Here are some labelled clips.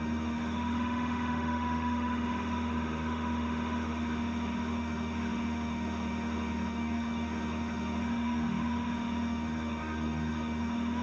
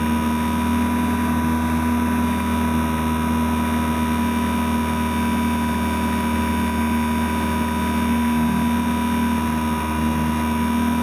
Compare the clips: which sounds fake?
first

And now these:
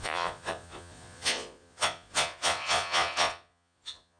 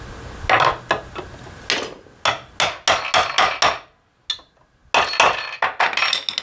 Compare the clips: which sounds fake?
first